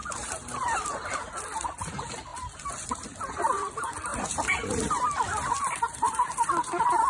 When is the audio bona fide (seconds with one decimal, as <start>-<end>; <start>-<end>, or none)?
1.9-4.1